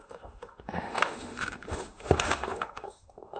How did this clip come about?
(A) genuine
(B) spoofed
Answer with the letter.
B